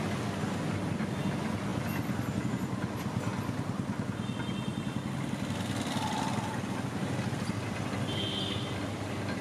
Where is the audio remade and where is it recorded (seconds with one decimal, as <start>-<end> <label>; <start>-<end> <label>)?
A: 0.0-9.4 recorded